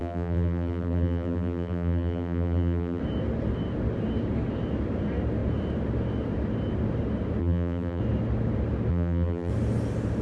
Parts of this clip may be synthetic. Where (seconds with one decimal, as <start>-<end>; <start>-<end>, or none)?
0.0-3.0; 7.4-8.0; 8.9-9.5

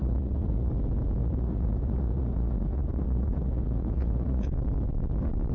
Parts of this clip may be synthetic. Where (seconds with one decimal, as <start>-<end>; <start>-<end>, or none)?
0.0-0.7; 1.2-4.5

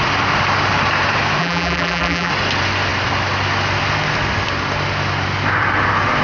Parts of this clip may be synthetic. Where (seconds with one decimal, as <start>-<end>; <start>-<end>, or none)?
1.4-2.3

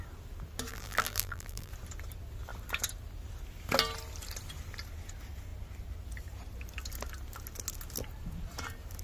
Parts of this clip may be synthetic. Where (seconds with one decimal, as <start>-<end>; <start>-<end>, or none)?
0.7-1.7

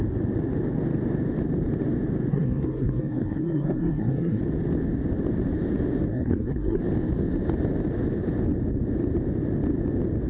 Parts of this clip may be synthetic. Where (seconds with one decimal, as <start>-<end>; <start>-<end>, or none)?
2.3-4.4; 6.1-6.8

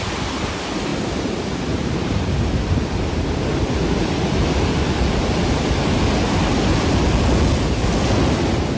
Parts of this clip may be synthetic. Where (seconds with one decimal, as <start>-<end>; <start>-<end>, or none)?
0.9-3.5